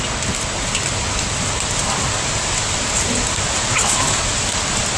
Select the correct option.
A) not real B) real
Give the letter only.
B